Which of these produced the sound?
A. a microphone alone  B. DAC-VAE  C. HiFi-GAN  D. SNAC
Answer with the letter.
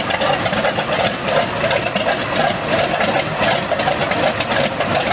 A